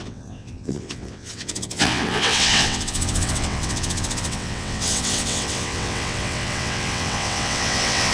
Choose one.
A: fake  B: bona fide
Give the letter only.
A